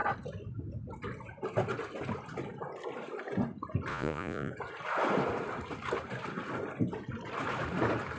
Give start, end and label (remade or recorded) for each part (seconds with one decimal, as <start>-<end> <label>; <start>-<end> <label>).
0.0-3.9 recorded; 3.9-4.5 remade; 4.5-8.2 recorded